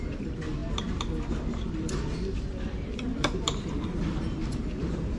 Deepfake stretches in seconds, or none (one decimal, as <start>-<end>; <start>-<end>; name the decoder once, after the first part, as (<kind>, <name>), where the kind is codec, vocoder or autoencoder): 0.6-3.7 (vocoder, BigVGAN v2)